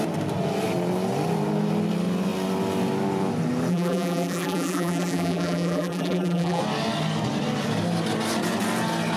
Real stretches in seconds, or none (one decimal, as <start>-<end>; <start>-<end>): 0.0-3.7; 6.6-9.2